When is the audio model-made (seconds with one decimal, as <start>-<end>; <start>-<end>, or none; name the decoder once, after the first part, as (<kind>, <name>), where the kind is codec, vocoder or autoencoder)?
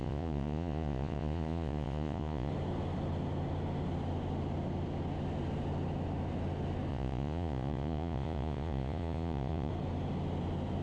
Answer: 0.0-2.5 (vocoder, Vocos); 6.9-9.7